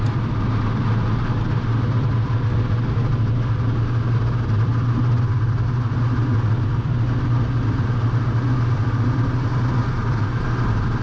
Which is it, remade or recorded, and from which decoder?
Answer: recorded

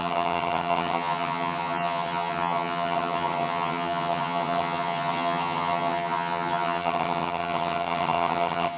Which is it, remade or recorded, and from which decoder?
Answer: remade, vocoder, HiFi-GAN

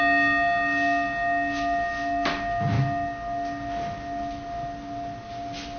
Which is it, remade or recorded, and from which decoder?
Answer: recorded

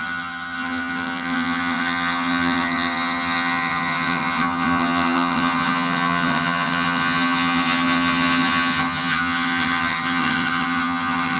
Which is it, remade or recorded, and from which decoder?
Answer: remade, vocoder, HiFi-GAN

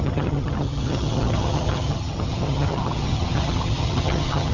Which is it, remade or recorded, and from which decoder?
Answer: remade, vocoder, HiFi-GAN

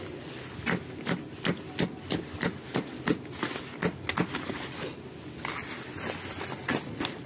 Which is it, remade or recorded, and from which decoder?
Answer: recorded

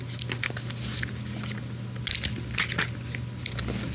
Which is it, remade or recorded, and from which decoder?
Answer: recorded